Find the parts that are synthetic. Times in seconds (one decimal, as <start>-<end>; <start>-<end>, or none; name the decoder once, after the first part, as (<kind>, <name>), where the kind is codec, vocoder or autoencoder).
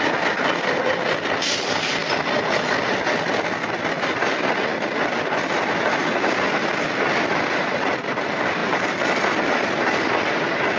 2.0-3.3 (vocoder, BigVGAN v2); 4.7-5.6; 8.6-9.5